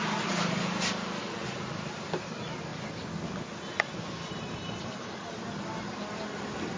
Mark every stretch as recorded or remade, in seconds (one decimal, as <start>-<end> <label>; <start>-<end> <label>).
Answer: 0.0-6.8 recorded